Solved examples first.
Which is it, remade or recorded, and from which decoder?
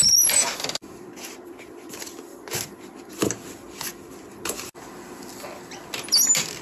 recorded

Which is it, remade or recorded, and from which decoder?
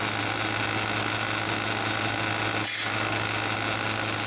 recorded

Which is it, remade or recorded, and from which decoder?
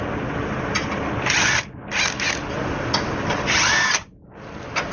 recorded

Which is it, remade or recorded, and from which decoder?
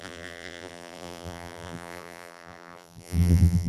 remade, vocoder, BigVGAN v2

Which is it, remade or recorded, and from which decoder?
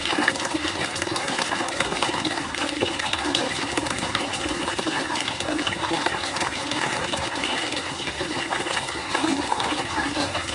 remade, codec, SNAC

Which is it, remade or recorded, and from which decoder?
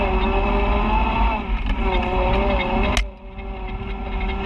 recorded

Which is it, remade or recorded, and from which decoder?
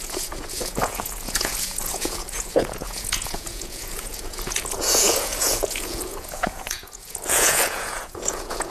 remade, vocoder, Vocos